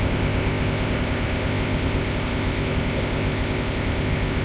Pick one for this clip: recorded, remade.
remade